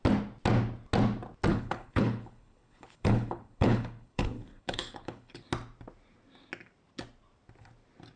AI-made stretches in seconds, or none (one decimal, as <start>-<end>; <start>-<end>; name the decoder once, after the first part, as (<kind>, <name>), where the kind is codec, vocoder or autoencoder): 1.5-5.4 (codec, HILCodec)

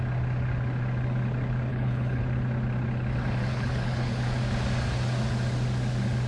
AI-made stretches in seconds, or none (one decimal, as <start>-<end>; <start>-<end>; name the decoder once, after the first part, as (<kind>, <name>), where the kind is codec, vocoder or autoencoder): 1.7-2.2 (codec, HILCodec); 3.5-4.1

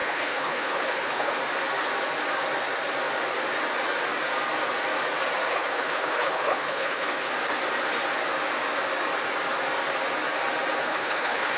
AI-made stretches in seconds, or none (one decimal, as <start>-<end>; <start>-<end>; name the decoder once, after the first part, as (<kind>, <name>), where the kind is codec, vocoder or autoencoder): 0.0-1.3 (codec, HILCodec); 5.5-7.3; 10.8-11.6

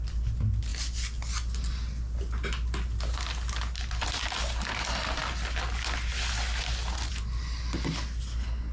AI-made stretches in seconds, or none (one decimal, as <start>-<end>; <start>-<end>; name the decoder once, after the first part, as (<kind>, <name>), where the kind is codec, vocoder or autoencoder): none

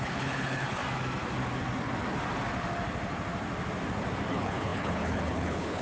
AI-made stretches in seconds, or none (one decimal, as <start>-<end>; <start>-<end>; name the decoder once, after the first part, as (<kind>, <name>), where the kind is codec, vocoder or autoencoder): 0.0-0.8 (codec, HILCodec); 4.3-5.8

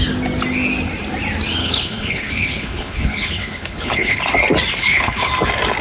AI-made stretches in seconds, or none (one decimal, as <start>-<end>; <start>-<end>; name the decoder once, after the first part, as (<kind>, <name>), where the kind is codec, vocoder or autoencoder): 1.6-4.2 (codec, HILCodec); 4.8-5.3

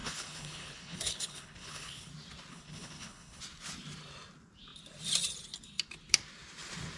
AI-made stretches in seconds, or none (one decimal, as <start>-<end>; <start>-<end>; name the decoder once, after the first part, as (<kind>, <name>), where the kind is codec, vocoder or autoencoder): 0.0-2.1 (codec, HILCodec); 2.5-3.4